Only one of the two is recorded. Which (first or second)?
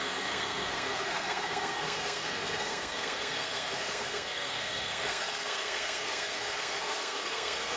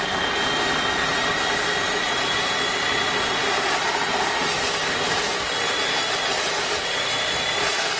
second